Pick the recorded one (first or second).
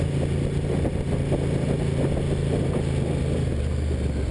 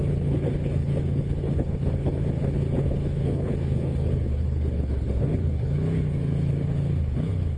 first